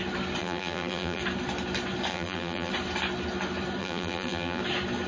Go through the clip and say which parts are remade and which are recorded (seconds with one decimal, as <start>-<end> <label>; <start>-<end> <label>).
0.0-0.4 recorded; 0.4-1.2 remade; 1.2-2.1 recorded; 2.1-2.7 remade; 2.7-3.8 recorded; 3.8-4.6 remade; 4.6-5.1 recorded